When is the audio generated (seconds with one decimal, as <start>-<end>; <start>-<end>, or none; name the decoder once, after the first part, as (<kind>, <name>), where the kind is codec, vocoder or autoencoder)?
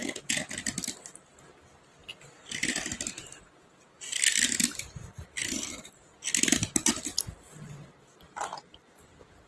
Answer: 0.9-2.0 (vocoder, BigVGAN v2); 4.2-9.5